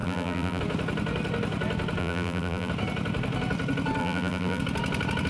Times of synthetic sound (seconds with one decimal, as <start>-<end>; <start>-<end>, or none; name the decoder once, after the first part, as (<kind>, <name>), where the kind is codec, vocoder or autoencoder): 0.0-0.6 (vocoder, BigVGAN v2); 2.0-2.7; 4.0-4.6